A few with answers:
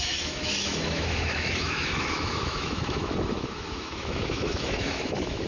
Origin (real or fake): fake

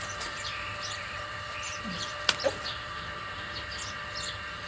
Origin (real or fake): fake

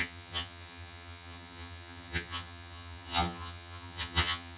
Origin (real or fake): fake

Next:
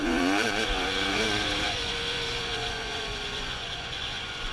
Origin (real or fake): fake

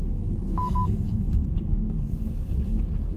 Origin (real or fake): fake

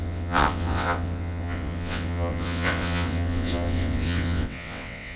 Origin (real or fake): fake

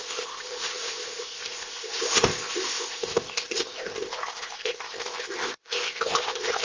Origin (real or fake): fake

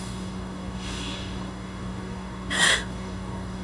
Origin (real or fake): fake